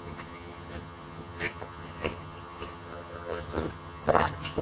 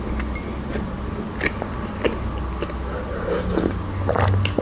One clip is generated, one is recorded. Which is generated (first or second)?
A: first